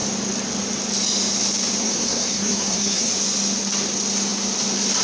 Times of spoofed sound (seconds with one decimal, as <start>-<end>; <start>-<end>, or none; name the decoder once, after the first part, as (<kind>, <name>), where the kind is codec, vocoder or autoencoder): 1.8-3.1 (codec, SNAC)